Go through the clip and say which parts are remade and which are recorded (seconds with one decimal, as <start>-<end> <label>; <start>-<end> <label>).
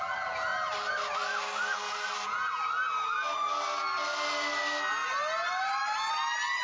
0.0-6.6 recorded